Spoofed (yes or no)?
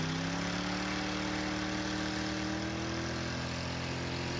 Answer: no